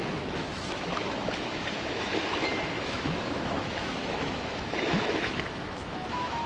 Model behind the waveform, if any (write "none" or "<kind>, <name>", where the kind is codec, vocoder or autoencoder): autoencoder, DAC-VAE